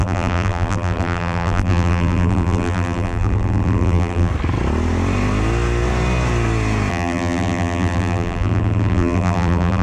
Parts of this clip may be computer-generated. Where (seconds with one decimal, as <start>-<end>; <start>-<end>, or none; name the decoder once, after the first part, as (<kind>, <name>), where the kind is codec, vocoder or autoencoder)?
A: 0.0-4.3 (vocoder, BigVGAN v2); 6.9-9.8